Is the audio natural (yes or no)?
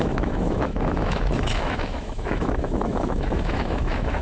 no